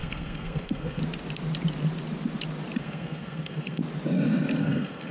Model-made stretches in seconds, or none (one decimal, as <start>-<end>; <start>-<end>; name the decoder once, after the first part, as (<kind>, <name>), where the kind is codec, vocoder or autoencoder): 0.0-1.0 (codec, SNAC); 2.8-3.8; 4.6-5.1